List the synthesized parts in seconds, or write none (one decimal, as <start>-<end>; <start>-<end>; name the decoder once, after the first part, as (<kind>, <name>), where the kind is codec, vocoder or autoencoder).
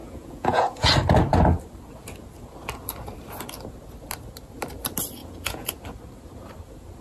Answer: 0.0-0.9 (vocoder, Vocos); 5.2-5.7